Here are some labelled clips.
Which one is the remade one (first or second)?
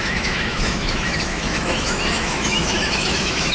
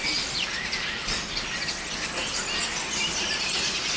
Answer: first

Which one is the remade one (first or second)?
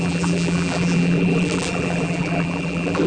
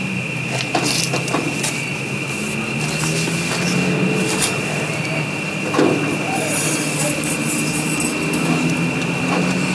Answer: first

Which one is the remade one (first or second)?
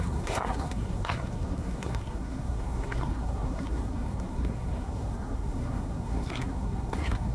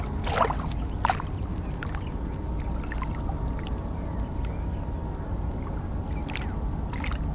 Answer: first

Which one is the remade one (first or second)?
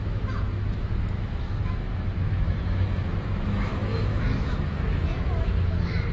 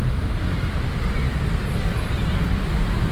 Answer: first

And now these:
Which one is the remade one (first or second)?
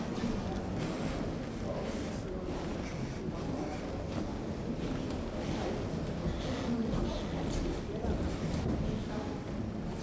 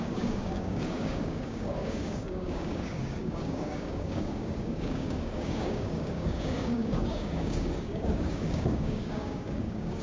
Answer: second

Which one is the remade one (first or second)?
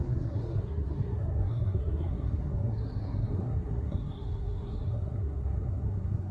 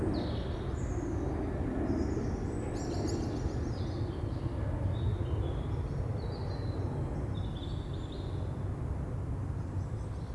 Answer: first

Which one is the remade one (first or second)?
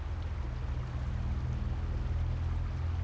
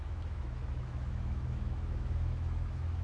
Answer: second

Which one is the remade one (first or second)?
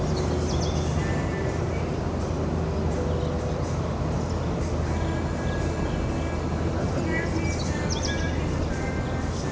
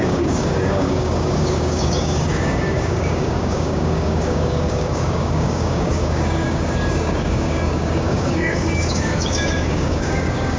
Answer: second